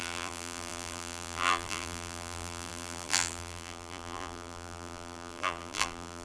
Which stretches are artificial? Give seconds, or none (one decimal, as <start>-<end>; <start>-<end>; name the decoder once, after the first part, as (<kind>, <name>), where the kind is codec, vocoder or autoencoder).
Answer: 0.0-6.2 (vocoder, BigVGAN v2)